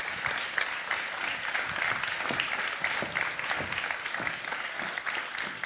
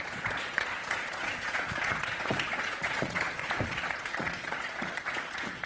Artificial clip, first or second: second